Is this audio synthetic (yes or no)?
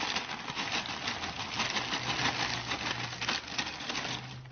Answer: no